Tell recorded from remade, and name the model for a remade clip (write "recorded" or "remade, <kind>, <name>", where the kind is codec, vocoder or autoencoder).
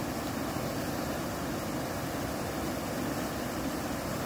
remade, vocoder, BigVGAN v2